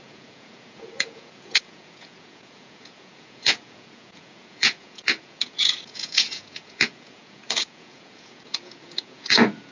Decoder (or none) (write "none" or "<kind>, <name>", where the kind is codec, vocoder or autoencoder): vocoder, Vocos